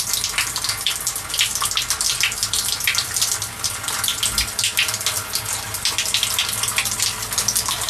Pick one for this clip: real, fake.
real